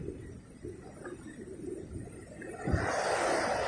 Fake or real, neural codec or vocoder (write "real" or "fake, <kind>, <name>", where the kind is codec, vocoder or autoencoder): real